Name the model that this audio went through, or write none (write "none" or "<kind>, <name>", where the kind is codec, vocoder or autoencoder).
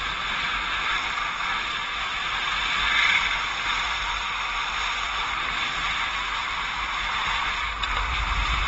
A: none